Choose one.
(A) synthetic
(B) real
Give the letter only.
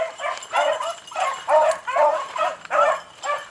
A